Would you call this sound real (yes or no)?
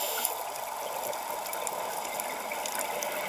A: yes